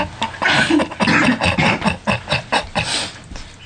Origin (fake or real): real